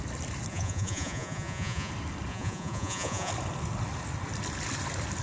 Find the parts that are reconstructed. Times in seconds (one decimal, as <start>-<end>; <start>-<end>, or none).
0.5-1.9; 2.3-3.3